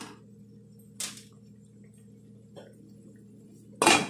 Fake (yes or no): no